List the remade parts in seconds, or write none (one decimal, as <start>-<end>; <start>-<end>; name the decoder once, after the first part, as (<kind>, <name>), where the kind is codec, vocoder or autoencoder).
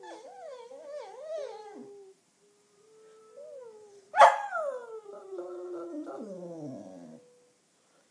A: none